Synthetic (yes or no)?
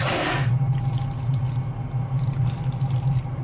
no